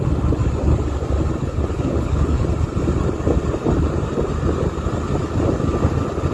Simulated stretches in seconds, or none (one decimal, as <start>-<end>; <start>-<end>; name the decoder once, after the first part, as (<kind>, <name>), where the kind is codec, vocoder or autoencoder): 1.4-2.4 (codec, HILCodec)